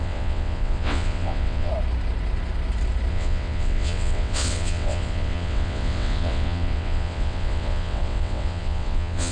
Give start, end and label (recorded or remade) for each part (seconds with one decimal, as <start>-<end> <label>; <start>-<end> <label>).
0.0-1.7 remade; 1.7-3.1 recorded; 3.1-9.3 remade